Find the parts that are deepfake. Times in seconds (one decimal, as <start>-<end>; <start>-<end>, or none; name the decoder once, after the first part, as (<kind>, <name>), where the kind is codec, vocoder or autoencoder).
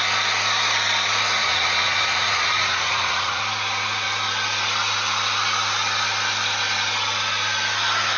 1.4-3.4 (vocoder, Vocos)